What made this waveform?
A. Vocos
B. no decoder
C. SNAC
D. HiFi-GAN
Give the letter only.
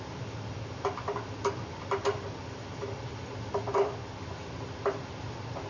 B